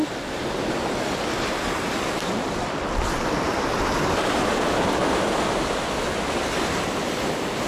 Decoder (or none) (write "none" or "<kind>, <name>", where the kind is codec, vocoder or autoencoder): none